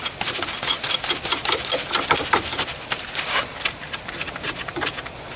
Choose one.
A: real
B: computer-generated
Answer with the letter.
A